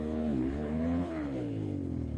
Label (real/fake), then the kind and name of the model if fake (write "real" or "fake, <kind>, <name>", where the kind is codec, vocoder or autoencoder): fake, codec, HILCodec